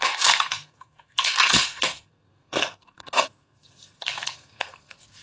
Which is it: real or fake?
fake